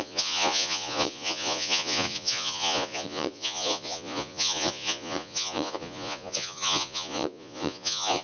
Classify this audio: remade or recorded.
remade